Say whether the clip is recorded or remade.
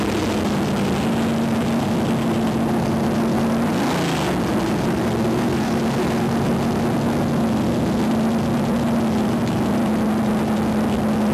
recorded